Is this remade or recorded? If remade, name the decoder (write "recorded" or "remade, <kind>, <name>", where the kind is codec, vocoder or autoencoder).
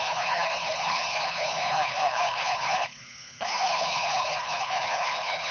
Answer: remade, codec, HILCodec